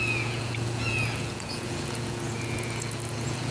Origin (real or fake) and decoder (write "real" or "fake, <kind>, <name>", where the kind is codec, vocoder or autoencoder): fake, vocoder, Vocos